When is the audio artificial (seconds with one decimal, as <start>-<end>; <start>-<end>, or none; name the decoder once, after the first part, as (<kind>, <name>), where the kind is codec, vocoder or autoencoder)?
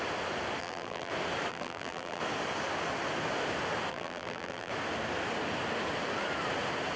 0.6-1.1 (vocoder, BigVGAN v2); 1.5-2.2; 3.9-4.7